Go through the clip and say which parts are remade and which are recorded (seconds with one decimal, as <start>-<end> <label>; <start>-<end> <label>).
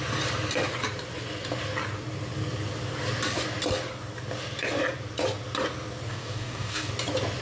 0.0-6.1 recorded; 6.1-6.9 remade; 6.9-7.4 recorded